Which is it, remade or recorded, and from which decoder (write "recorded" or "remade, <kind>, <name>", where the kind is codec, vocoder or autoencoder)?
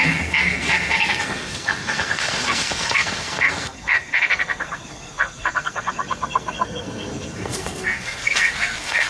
remade, codec, SNAC